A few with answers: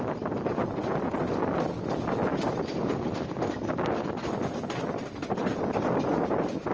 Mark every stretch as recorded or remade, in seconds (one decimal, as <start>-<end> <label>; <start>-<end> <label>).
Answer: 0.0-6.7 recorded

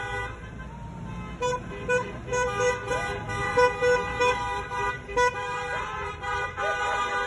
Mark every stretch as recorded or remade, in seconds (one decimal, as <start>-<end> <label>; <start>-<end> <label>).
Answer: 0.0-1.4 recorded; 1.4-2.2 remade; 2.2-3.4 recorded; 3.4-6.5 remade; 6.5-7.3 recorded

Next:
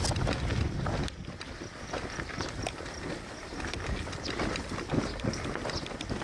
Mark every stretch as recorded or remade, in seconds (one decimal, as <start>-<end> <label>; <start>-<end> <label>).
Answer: 0.0-6.2 recorded

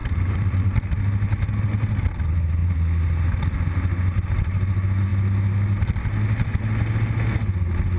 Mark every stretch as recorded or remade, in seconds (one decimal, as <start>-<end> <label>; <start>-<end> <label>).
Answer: 0.0-0.8 remade; 0.8-8.0 recorded

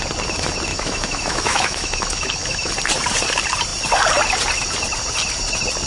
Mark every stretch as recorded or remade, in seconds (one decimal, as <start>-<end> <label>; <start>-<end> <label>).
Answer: 0.0-0.7 recorded; 0.7-2.7 remade; 2.7-5.9 recorded

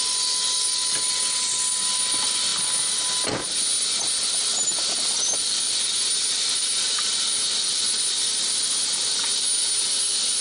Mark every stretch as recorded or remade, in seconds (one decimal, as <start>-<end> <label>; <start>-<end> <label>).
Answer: 0.0-10.4 recorded